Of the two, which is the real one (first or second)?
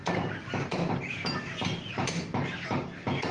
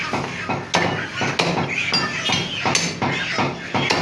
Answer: second